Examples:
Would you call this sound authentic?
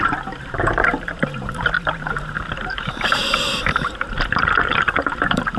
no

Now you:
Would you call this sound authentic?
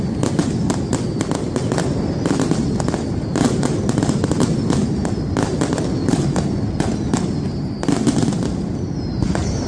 yes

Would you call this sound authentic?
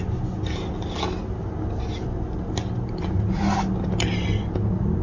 yes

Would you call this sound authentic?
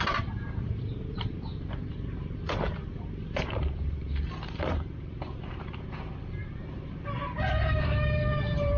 no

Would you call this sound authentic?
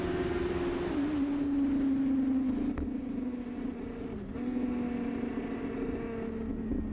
yes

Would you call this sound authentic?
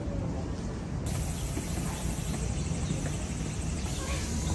yes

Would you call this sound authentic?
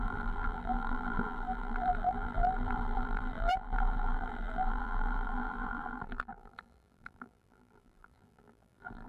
no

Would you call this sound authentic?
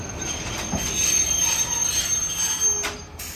yes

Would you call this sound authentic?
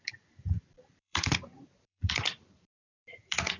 no